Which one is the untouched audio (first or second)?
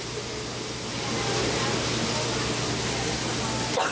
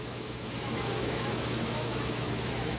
first